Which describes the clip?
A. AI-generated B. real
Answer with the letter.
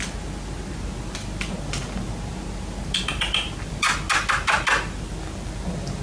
B